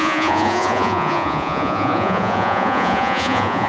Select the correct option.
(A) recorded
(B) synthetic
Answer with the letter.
B